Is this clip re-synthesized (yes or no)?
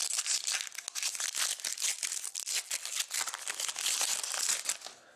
no